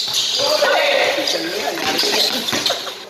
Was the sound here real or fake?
real